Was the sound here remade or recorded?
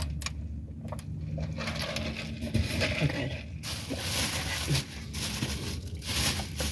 recorded